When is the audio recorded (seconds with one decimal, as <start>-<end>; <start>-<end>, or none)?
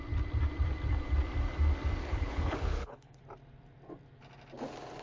0.0-2.0; 3.2-5.0